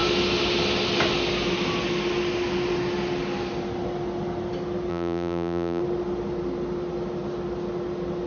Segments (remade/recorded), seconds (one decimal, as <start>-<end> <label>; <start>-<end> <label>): 0.0-4.9 recorded; 4.9-5.8 remade; 5.8-8.3 recorded